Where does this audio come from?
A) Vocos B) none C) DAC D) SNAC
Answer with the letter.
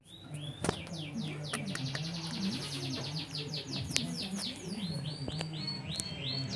B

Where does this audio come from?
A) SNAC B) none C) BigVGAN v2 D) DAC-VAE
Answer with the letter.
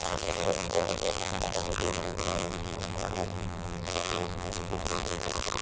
C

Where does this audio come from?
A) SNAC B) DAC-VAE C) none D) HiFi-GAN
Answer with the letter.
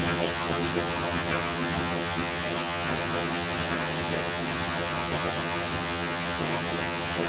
D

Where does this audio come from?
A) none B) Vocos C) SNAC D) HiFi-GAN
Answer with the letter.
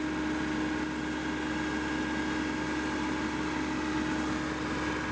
A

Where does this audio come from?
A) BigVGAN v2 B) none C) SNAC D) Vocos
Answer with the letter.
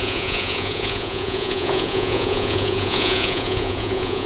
D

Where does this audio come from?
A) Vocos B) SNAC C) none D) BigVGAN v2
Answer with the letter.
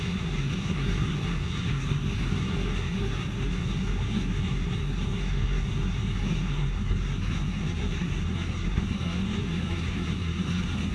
B